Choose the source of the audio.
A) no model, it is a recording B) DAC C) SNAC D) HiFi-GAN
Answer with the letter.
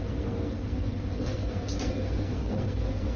C